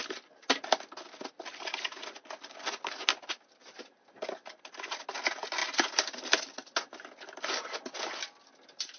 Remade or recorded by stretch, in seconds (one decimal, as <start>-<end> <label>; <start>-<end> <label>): 0.0-9.0 recorded